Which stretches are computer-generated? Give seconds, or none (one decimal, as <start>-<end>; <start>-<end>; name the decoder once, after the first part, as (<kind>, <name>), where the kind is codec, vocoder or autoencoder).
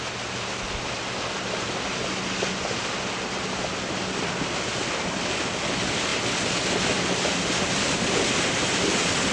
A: none